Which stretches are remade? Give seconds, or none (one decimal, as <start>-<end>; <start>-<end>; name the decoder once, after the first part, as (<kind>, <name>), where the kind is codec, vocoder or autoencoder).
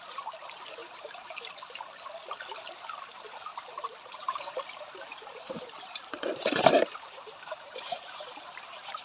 0.8-1.4 (vocoder, BigVGAN v2); 3.5-9.0